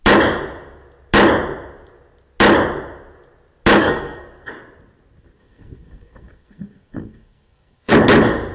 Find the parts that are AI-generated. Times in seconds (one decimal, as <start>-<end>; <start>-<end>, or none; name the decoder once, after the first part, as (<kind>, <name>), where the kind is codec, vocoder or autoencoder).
3.8-4.5 (codec, SNAC); 5.4-7.9